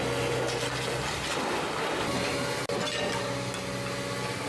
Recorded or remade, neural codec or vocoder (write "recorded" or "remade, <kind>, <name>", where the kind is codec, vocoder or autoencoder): recorded